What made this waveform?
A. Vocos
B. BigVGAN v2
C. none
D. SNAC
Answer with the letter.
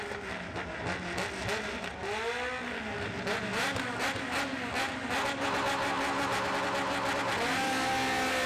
C